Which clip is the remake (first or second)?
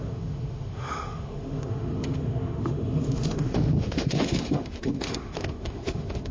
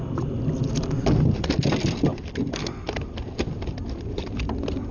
first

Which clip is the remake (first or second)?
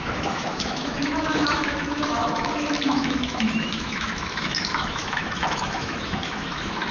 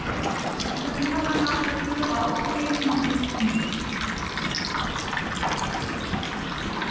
first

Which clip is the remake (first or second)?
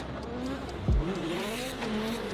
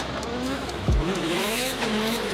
second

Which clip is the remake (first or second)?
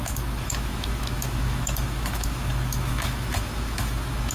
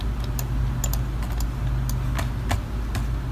first